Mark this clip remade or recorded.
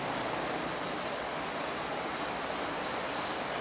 recorded